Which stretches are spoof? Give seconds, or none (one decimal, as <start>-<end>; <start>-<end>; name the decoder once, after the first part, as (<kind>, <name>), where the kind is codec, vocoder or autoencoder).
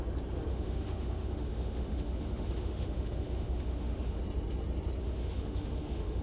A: 0.5-4.2 (autoencoder, DAC-VAE); 5.0-6.2